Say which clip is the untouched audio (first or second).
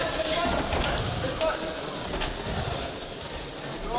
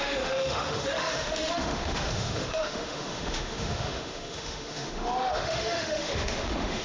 first